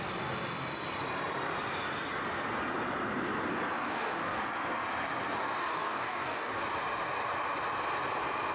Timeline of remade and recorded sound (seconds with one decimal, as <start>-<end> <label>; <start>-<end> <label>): 0.0-3.8 recorded; 3.8-4.4 remade; 4.4-5.6 recorded; 5.6-6.6 remade; 6.6-8.5 recorded